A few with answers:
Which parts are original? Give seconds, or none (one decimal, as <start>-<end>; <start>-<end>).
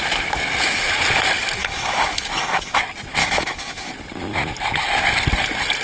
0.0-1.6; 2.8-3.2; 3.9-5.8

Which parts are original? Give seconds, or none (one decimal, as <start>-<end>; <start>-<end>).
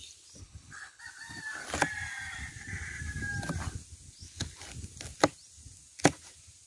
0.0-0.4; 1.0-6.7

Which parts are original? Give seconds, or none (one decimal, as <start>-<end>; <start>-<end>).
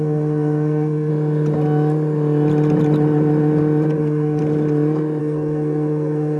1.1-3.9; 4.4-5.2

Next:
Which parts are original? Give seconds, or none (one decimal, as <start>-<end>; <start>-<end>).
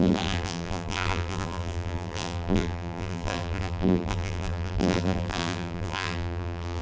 none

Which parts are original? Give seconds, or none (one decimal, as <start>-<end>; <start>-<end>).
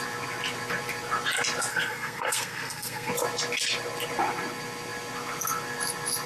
0.0-1.7; 3.1-6.3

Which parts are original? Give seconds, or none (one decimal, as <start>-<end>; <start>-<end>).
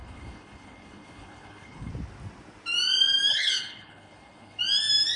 1.9-3.3; 4.6-5.2